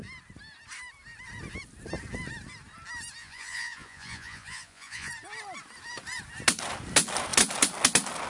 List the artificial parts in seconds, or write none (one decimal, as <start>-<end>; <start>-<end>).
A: 3.2-5.1